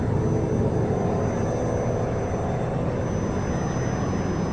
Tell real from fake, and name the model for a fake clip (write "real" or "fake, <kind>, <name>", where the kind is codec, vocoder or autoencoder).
real